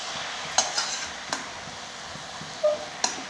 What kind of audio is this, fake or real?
real